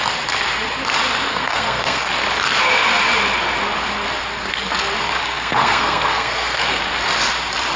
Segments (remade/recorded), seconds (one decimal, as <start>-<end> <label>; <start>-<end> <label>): 0.0-1.3 recorded; 1.3-2.1 remade; 2.1-5.2 recorded; 5.2-6.8 remade; 6.8-7.8 recorded